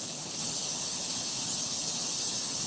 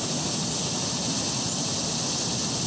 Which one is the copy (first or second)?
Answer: first